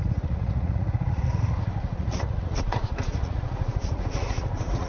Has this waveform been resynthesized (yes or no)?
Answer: yes